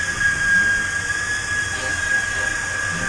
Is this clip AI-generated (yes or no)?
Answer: no